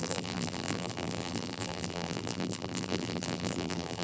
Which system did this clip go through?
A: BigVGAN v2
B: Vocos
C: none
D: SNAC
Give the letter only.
A